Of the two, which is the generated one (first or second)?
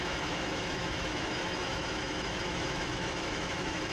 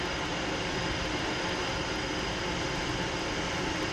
first